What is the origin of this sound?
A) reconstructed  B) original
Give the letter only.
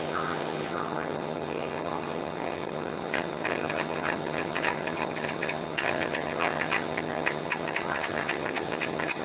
A